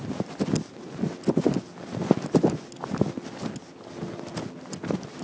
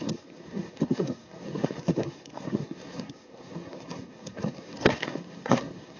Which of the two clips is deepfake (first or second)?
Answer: second